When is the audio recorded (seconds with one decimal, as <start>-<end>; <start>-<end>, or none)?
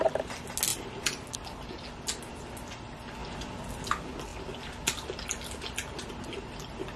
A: 0.0-7.0